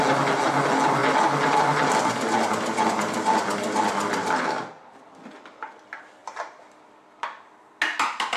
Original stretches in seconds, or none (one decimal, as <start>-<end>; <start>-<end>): 0.0-6.2; 7.8-8.4